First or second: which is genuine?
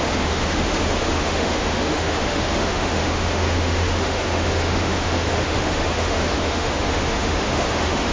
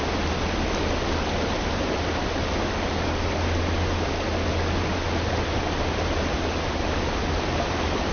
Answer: second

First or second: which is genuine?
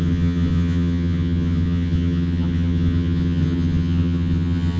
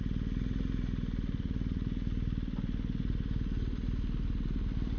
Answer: second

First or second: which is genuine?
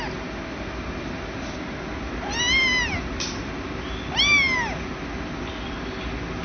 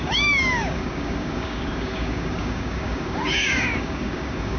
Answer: first